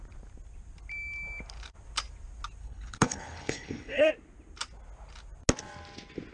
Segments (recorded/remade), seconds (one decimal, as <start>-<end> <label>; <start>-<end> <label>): 0.0-2.6 recorded; 2.6-4.1 remade; 4.1-6.3 recorded